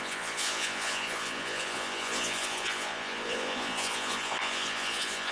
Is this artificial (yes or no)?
yes